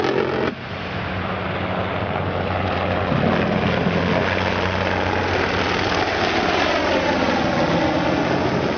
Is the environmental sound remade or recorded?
recorded